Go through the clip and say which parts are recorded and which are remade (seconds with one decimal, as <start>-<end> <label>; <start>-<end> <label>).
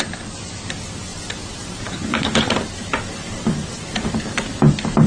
0.0-5.1 remade